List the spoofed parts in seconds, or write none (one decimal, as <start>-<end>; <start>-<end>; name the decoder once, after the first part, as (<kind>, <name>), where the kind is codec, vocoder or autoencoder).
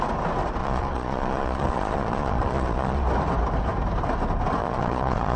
0.6-3.0 (vocoder, Vocos); 4.6-5.4